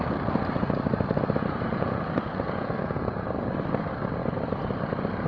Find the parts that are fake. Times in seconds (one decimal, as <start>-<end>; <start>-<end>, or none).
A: 1.7-3.3